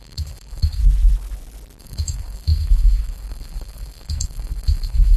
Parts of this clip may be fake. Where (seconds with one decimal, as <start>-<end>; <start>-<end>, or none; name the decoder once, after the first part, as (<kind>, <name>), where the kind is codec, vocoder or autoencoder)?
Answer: 0.0-0.8 (codec, SNAC); 1.8-5.2